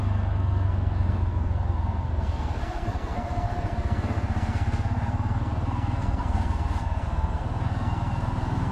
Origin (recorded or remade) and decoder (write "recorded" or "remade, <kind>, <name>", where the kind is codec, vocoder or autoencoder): remade, codec, SNAC